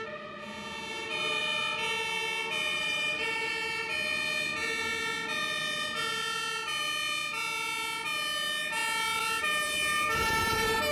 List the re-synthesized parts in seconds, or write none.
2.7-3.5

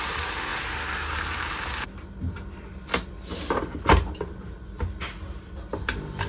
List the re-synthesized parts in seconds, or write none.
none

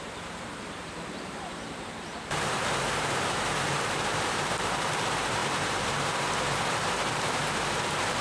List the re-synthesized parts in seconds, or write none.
0.0-5.4; 7.1-8.2

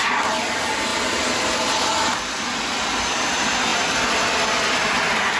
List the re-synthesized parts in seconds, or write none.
0.9-2.2